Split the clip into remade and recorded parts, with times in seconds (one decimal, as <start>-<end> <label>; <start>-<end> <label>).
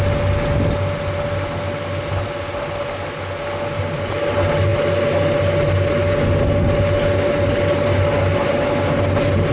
0.0-9.5 recorded